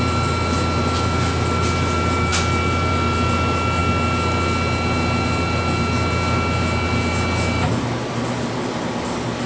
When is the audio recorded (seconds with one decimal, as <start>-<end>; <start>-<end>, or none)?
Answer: 0.0-9.5